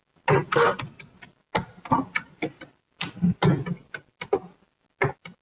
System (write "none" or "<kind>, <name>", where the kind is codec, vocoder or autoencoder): none